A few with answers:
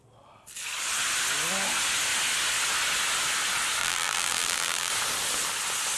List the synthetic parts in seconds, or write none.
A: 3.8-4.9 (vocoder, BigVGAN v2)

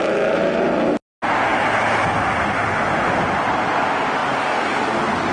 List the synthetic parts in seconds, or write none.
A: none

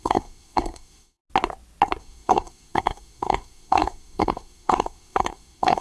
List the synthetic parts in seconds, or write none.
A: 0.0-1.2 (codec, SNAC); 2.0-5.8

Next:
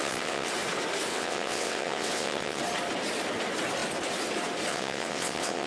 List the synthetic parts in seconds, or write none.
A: 0.0-0.5 (vocoder, WaveNeXt); 1.1-2.6; 4.7-5.7

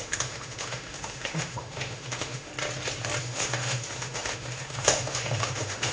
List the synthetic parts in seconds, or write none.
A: 0.0-2.5 (autoencoder, DAC-VAE); 3.2-5.9

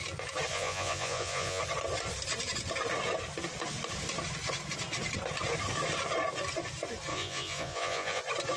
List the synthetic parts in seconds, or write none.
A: 0.5-1.6 (vocoder, Vocos); 7.1-8.2

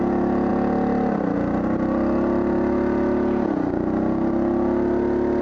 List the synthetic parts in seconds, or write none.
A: none

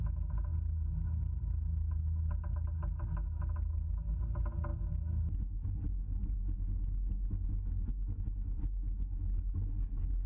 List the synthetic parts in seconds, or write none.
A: none